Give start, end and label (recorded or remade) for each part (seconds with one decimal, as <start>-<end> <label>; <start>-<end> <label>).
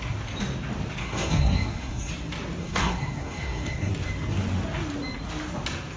0.0-1.0 recorded; 1.0-2.1 remade; 2.1-2.6 recorded; 2.6-3.9 remade; 3.9-6.0 recorded